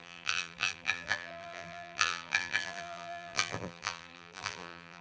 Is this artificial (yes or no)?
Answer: yes